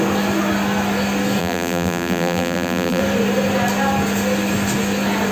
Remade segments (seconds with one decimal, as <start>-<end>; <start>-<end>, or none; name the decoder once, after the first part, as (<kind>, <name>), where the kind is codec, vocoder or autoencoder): 1.4-3.0 (vocoder, BigVGAN v2)